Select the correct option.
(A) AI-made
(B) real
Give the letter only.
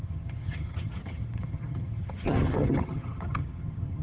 A